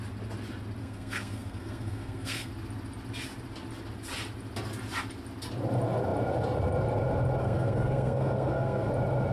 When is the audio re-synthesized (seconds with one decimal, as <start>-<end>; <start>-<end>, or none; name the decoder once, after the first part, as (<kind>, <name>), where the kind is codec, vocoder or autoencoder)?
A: 0.8-2.5 (codec, SNAC); 7.4-8.9

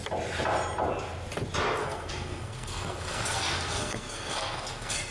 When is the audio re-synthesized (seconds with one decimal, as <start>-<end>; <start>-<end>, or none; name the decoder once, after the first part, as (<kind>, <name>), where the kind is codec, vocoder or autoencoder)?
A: 1.8-5.1 (codec, SNAC)

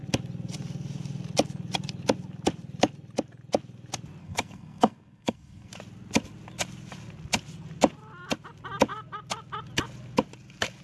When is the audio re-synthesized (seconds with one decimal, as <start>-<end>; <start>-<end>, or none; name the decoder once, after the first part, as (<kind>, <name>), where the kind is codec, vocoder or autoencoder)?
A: 4.2-5.7 (codec, SNAC)